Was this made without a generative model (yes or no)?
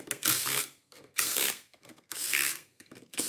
no